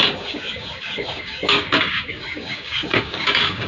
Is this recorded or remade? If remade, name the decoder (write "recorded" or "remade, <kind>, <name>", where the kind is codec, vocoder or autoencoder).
remade, codec, DAC